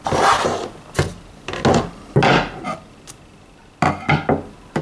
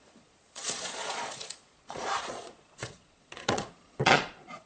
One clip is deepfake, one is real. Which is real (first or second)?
first